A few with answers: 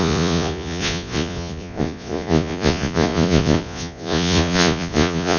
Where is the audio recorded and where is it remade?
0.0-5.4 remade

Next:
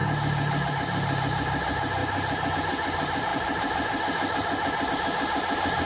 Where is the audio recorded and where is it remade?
0.0-5.8 recorded

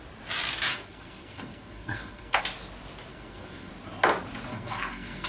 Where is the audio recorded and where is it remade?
0.0-0.7 recorded; 0.7-2.4 remade; 2.4-3.1 recorded; 3.1-3.7 remade; 3.7-4.5 recorded; 4.5-5.3 remade

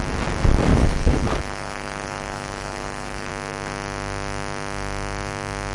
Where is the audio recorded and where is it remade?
0.0-0.7 recorded; 0.7-3.3 remade; 3.3-5.7 recorded